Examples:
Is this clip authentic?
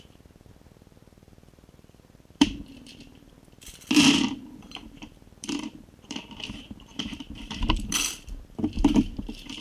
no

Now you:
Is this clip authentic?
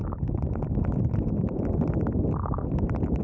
yes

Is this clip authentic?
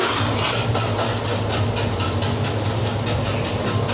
yes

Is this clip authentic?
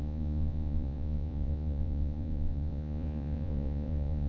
no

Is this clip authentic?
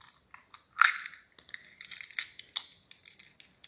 yes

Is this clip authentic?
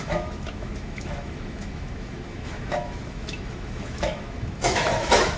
no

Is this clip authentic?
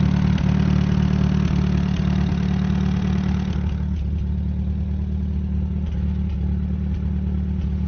yes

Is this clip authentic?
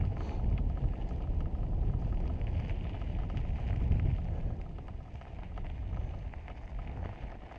yes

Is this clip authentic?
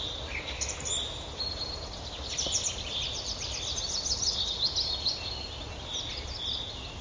yes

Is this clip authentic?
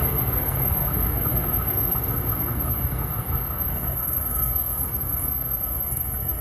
no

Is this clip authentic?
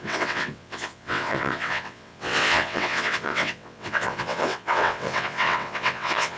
no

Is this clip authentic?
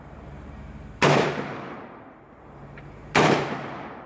no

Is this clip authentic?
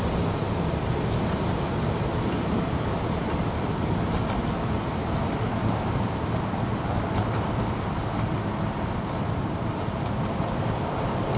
yes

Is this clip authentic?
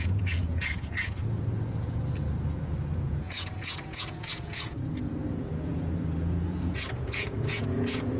no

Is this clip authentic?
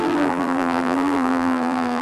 no